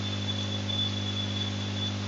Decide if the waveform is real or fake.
real